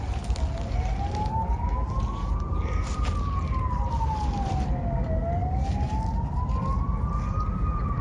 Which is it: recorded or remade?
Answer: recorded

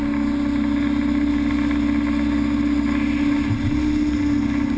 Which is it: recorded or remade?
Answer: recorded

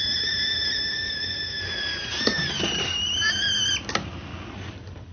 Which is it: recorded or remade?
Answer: recorded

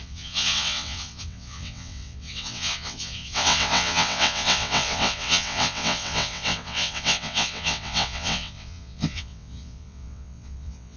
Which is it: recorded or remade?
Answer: remade